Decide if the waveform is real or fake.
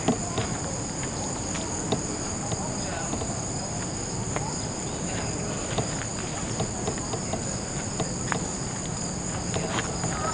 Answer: real